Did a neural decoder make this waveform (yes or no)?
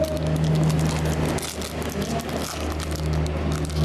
no